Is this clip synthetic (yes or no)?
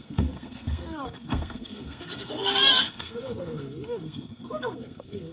yes